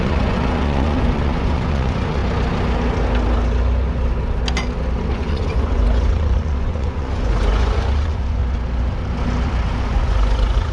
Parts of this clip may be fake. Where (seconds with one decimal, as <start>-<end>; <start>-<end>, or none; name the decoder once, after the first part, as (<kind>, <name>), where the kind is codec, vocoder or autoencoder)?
0.0-2.2 (vocoder, Vocos); 5.1-8.4; 9.8-10.7

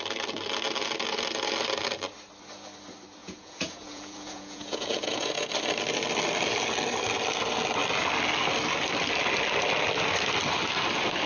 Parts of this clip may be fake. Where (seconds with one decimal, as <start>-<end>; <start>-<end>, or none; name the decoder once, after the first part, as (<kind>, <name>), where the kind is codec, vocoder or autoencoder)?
3.2-5.5 (vocoder, Vocos)

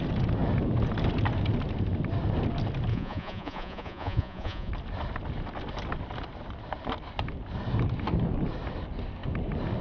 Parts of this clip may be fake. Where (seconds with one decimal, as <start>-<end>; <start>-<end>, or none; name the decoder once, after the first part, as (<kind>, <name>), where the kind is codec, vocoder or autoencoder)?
2.9-4.7 (vocoder, Vocos)

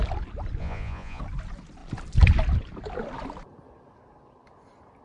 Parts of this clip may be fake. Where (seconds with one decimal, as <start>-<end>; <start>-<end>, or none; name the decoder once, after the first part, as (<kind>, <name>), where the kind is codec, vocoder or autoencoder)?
0.6-1.2 (vocoder, Vocos)

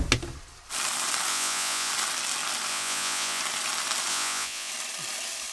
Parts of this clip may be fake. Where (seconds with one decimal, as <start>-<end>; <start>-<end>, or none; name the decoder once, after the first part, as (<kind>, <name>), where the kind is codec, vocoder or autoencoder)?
1.3-1.9 (vocoder, Vocos); 2.7-3.4; 4.1-4.7

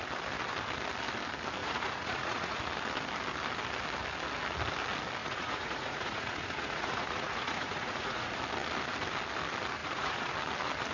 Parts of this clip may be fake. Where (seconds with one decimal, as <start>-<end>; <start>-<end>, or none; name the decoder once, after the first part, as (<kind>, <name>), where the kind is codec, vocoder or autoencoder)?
1.6-2.6 (vocoder, Vocos); 5.2-8.4; 9.8-10.3